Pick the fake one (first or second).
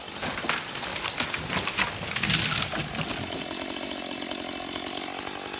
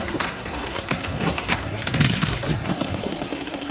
second